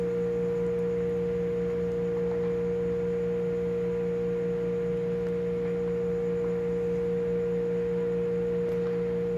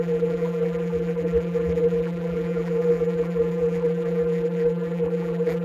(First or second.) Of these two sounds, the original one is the first